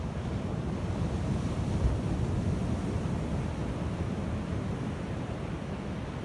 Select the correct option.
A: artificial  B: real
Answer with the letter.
B